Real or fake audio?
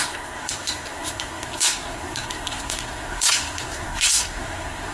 fake